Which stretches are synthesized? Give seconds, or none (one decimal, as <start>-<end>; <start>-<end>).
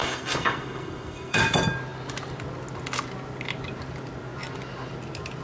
0.0-1.4